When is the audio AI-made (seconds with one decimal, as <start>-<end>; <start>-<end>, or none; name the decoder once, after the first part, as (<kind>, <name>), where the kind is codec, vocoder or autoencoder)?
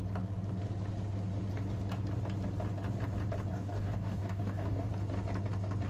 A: 3.5-4.9 (codec, DAC)